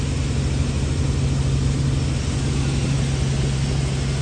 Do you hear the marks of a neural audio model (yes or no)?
no